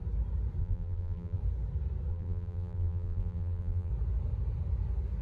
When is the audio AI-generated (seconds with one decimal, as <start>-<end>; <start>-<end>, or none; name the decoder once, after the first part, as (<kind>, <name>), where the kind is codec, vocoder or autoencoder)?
0.6-1.4 (vocoder, BigVGAN v2); 2.1-3.9

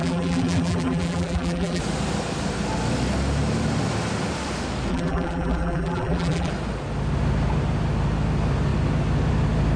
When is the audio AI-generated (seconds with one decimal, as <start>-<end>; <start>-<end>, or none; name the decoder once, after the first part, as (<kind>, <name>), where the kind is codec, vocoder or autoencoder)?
0.0-1.8 (vocoder, BigVGAN v2); 4.9-6.5